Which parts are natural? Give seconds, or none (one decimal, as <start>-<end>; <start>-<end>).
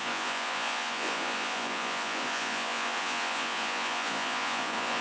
none